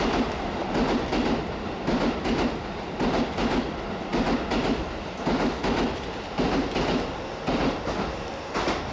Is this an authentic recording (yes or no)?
yes